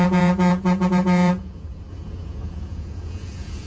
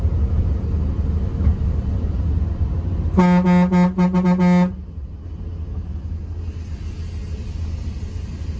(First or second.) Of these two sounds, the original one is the second